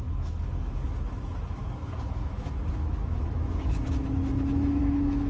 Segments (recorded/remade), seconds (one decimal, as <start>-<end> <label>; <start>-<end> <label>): 0.0-5.3 remade